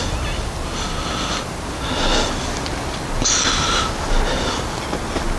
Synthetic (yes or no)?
no